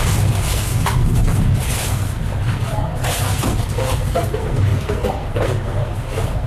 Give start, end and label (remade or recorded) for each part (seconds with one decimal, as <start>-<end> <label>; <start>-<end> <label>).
0.0-6.5 remade